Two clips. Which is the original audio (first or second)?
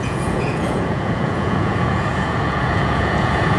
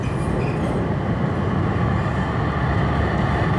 second